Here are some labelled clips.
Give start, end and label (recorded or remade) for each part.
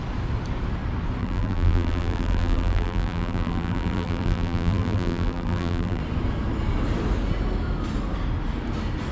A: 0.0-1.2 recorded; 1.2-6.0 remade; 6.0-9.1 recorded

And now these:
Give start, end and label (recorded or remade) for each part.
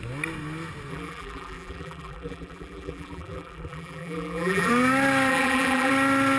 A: 0.0-0.9 recorded; 0.9-4.7 remade; 4.7-5.3 recorded; 5.3-5.9 remade; 5.9-6.4 recorded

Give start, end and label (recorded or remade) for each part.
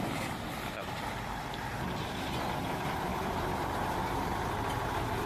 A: 0.0-3.1 recorded; 3.1-4.6 remade; 4.6-5.3 recorded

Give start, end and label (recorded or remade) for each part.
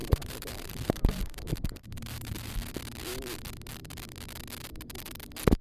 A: 0.0-2.7 remade; 2.7-5.6 recorded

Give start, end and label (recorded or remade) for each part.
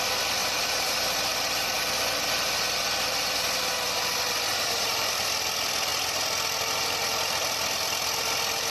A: 0.0-0.4 recorded; 0.4-1.3 remade; 1.3-4.5 recorded; 4.5-5.1 remade; 5.1-8.7 recorded